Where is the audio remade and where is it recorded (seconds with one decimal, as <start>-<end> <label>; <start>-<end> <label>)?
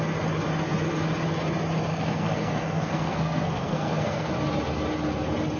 0.0-1.9 recorded; 1.9-4.3 remade; 4.3-5.6 recorded